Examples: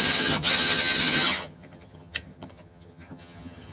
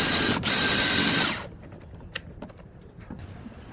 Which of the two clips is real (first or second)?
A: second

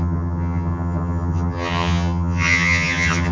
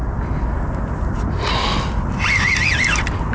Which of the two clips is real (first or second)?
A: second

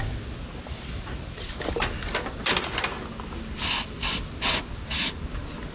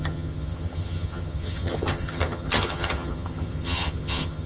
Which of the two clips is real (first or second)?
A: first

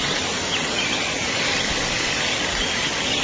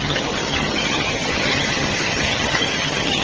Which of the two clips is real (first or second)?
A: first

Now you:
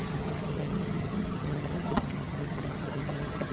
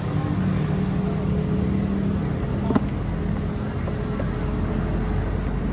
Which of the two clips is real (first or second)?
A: second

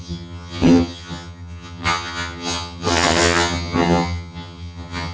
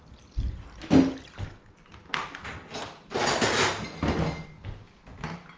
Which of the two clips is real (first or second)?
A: second